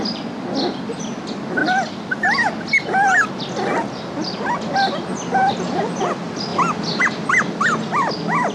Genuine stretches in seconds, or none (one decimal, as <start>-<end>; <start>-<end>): 0.0-8.5